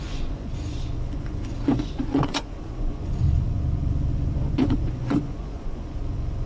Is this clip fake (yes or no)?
yes